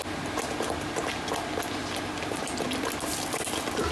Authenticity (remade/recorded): recorded